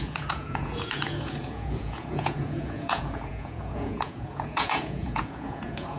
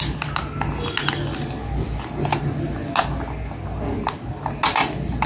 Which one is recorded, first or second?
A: second